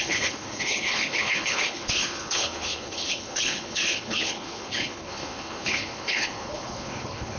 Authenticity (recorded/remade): remade